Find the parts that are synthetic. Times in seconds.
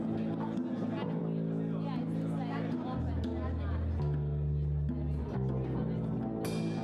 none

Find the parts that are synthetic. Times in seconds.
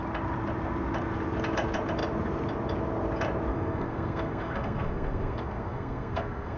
3.5-6.6 (codec, SNAC)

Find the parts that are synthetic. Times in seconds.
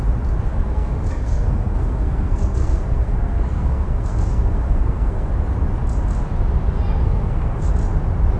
0.5-5.3 (codec, SNAC); 7.0-7.7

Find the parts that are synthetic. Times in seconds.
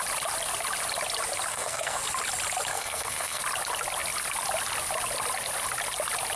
1.5-2.0 (codec, SNAC); 2.7-3.4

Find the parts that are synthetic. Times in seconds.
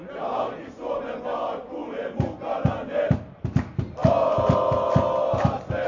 none